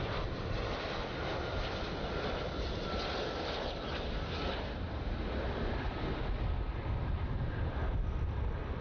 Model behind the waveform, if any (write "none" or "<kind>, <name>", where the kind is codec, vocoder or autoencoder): none